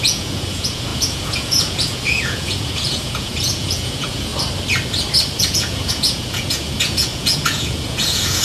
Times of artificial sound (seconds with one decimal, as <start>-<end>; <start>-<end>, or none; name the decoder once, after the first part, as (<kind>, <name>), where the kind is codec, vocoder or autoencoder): 0.0-4.3 (vocoder, Vocos); 5.4-8.4